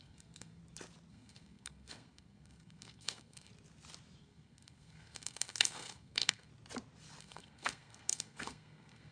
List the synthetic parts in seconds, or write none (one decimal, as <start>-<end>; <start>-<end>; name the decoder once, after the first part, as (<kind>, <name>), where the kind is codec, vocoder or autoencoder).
0.0-0.6 (codec, SNAC); 1.1-3.5; 4.2-6.5; 7.2-9.1